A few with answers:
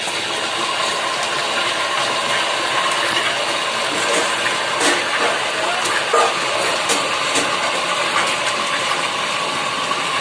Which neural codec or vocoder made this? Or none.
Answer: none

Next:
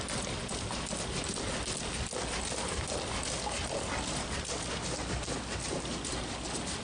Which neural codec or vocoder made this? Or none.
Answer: none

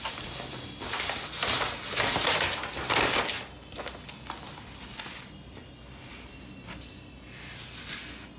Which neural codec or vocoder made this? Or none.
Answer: none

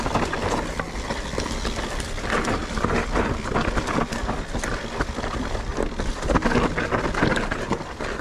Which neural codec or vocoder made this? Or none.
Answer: none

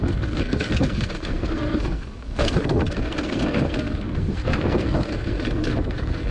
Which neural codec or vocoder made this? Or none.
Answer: codec, SNAC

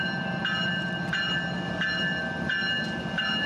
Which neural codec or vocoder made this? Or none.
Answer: none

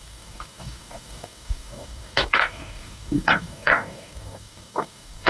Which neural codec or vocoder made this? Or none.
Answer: codec, DAC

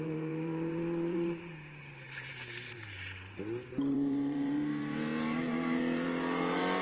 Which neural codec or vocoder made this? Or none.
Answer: vocoder, BigVGAN v2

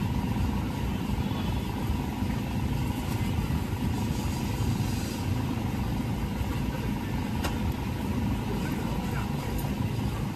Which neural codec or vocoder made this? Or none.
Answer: none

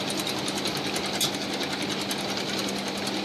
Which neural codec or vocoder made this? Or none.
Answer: none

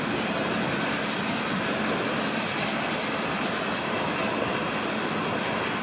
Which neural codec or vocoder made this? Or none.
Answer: none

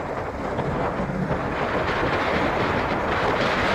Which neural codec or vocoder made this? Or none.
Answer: none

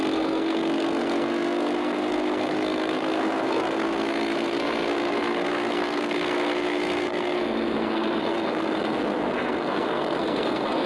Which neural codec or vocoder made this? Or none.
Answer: codec, SNAC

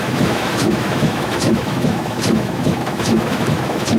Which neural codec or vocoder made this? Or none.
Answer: autoencoder, DAC-VAE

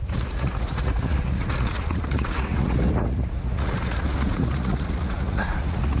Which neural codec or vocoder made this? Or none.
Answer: vocoder, Vocos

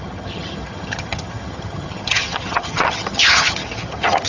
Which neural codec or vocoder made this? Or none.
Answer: vocoder, HiFi-GAN